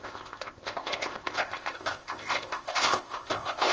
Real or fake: fake